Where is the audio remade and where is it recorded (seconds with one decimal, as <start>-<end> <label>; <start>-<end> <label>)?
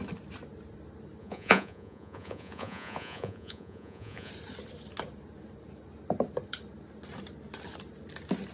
0.0-1.2 recorded; 1.2-4.3 remade; 4.3-8.5 recorded